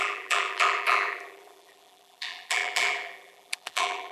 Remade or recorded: remade